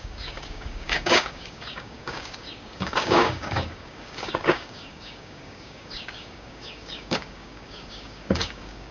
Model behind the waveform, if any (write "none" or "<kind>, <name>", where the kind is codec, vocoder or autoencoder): codec, DAC